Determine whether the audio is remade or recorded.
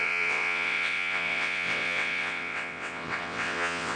remade